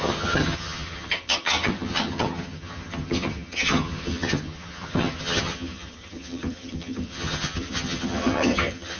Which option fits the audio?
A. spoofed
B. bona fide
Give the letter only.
A